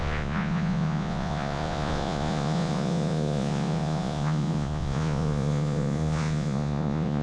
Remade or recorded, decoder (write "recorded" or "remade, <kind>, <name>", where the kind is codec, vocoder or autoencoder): remade, vocoder, Vocos